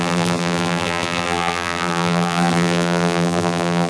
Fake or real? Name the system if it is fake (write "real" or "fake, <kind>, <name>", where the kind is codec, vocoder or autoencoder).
fake, vocoder, BigVGAN v2